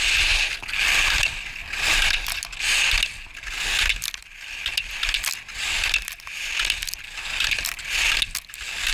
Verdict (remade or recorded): recorded